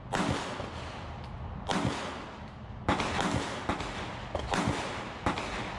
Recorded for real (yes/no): yes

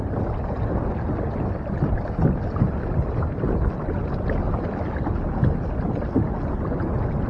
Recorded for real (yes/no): yes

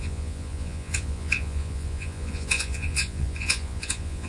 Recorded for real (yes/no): no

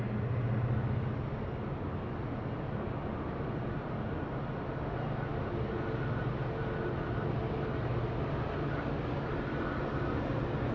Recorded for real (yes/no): yes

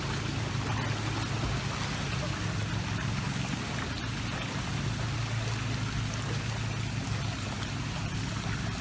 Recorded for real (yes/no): yes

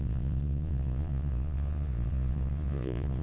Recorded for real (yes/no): no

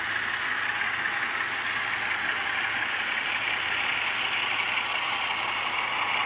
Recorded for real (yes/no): yes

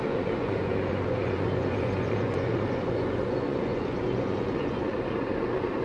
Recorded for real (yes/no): no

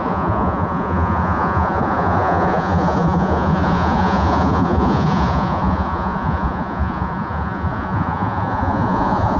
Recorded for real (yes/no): no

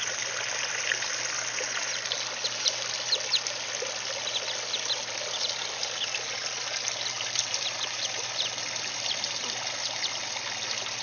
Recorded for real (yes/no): yes